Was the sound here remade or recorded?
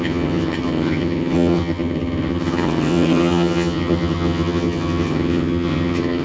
remade